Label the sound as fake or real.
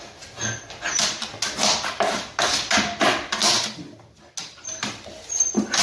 real